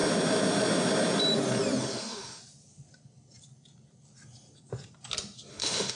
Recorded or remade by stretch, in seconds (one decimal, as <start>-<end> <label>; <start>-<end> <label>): 0.0-1.8 recorded; 1.8-2.4 remade; 2.4-5.5 recorded; 5.5-6.0 remade

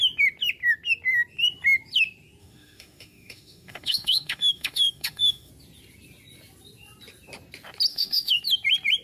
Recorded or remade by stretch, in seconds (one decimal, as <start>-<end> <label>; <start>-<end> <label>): 0.0-2.4 recorded; 2.4-5.5 remade; 5.5-7.9 recorded; 7.9-8.4 remade; 8.4-9.0 recorded